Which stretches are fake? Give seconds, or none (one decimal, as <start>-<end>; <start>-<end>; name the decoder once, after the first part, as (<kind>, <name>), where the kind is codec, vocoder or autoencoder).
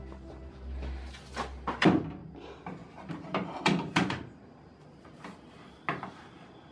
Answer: 2.8-5.4 (vocoder, BigVGAN v2)